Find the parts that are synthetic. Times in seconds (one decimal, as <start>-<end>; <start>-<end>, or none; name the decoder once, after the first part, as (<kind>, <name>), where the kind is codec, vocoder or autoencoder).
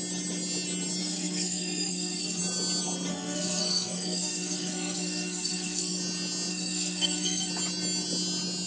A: 1.0-2.4 (codec, SNAC); 3.1-6.0; 6.5-7.5